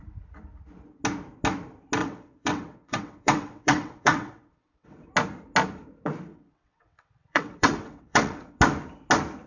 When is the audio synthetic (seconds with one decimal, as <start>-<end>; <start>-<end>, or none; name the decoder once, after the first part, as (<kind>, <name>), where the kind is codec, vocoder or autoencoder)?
2.0-5.1 (vocoder, WaveNeXt); 6.3-8.6